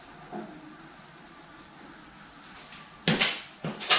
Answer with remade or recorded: recorded